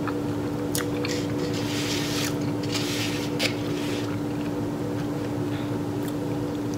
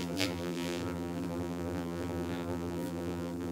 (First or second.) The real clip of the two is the first